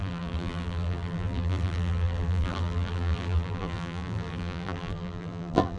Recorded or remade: remade